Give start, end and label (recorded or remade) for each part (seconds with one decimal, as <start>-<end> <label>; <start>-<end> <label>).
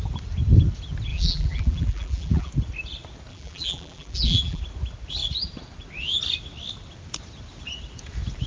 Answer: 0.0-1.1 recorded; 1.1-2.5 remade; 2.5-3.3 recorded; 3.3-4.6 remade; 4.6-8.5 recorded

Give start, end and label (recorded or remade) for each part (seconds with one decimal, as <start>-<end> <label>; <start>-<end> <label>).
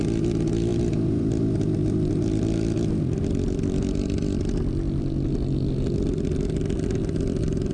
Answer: 0.0-0.7 recorded; 0.7-1.5 remade; 1.5-7.7 recorded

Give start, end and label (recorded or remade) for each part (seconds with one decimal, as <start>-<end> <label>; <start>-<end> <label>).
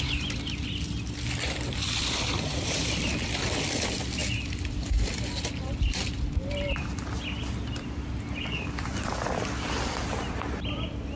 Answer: 0.0-4.2 remade; 4.2-8.3 recorded; 8.3-11.2 remade